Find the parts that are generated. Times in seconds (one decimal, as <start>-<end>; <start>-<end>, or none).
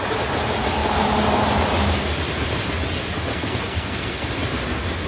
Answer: 3.3-4.3